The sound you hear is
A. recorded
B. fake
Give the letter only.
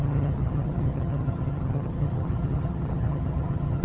B